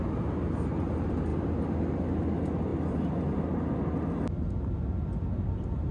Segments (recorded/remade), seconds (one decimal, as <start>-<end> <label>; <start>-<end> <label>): 0.0-5.9 recorded